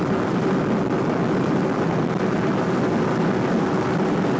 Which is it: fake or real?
real